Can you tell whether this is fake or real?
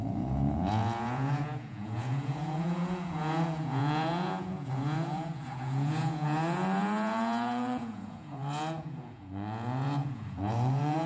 fake